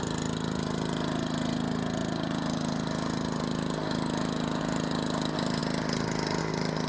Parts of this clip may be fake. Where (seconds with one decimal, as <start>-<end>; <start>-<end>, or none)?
none

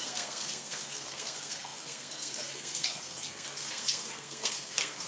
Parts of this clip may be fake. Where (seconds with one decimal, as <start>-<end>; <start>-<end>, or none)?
0.0-5.1

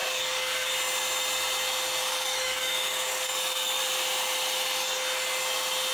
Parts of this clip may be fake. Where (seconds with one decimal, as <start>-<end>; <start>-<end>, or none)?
0.0-0.7; 2.0-3.8

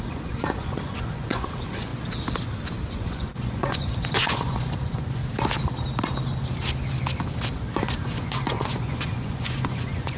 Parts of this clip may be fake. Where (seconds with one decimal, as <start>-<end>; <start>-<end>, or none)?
0.0-1.9; 2.9-5.2; 7.4-10.2

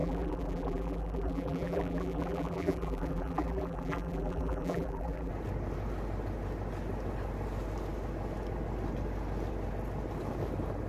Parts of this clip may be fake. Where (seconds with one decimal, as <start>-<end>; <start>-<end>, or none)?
0.0-5.3